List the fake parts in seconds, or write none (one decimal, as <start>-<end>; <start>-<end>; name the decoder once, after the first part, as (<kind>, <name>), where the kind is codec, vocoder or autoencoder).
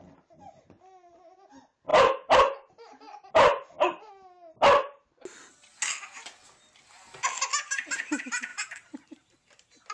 1.9-4.1 (vocoder, BigVGAN v2); 8.5-9.9